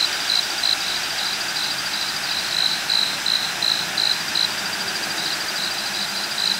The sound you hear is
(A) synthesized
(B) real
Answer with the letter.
B